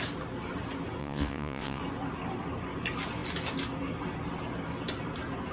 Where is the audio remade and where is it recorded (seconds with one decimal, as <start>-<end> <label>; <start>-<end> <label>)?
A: 0.0-1.0 recorded; 1.0-1.8 remade; 1.8-5.5 recorded